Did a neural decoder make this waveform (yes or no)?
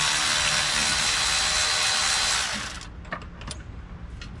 no